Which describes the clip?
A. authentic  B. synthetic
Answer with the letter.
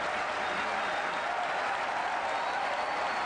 A